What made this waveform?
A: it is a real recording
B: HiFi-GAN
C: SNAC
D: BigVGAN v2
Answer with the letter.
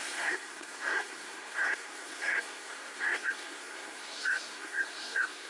C